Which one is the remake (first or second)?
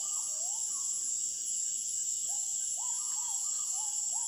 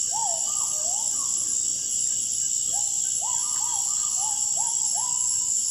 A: first